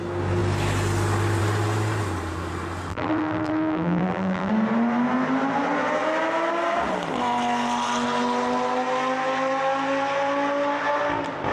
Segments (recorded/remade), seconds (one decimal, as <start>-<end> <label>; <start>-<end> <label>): 0.0-2.9 recorded; 2.9-4.5 remade; 4.5-11.5 recorded